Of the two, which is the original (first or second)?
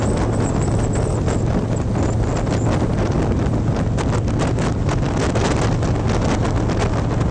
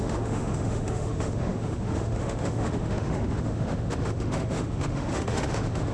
first